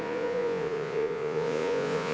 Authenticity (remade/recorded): remade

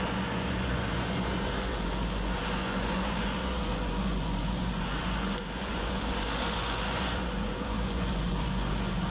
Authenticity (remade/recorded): remade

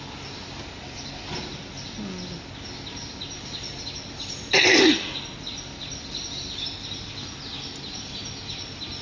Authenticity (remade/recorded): recorded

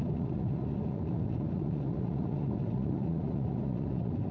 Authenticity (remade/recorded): remade